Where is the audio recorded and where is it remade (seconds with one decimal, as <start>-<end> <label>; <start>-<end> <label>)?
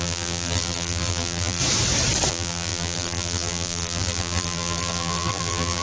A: 0.0-1.6 remade; 1.6-2.3 recorded; 2.3-5.8 remade